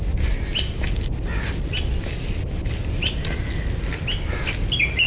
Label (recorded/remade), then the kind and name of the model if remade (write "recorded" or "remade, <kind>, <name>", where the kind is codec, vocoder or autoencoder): recorded